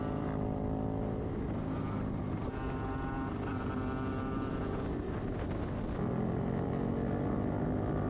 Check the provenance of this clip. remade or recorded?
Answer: recorded